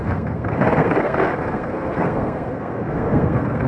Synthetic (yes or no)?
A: yes